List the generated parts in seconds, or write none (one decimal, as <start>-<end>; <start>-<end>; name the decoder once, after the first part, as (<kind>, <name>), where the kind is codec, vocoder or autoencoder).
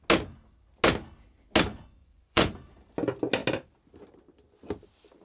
1.7-2.5 (vocoder, Vocos)